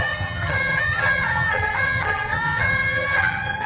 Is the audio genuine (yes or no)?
no